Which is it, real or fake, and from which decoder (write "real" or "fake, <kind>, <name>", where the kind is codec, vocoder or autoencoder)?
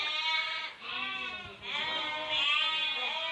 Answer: real